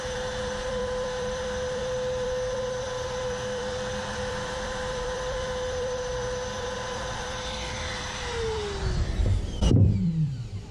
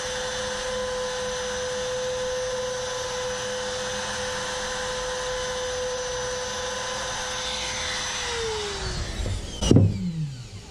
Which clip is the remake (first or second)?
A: first